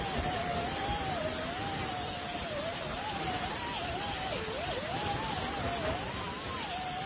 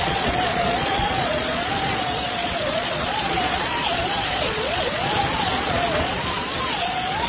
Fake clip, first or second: second